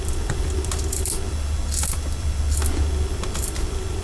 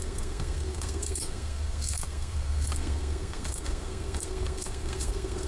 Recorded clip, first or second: first